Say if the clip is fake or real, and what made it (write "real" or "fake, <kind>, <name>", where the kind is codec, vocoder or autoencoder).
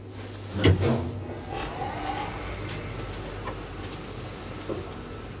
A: real